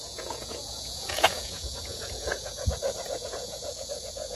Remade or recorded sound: remade